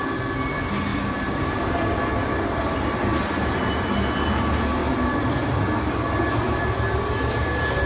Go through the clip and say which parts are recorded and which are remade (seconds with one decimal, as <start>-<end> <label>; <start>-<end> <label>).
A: 0.0-7.8 recorded